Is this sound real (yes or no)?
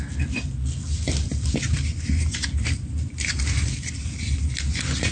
yes